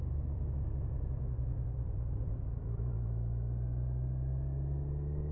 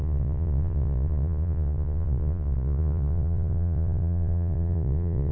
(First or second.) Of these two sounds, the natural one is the first